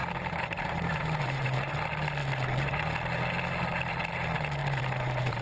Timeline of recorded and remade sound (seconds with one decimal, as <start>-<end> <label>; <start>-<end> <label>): 0.0-1.7 remade; 1.7-4.6 recorded; 4.6-5.4 remade